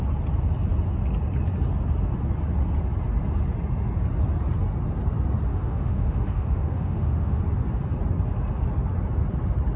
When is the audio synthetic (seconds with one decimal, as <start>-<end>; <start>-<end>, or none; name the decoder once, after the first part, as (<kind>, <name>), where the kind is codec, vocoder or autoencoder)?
5.5-7.4 (autoencoder, DAC-VAE)